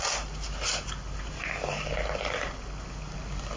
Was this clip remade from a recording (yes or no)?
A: no